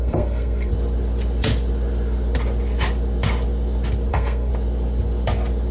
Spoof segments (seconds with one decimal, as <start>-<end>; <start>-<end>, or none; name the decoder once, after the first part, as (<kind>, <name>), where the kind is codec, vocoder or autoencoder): 0.0-0.7 (codec, SNAC); 4.1-4.5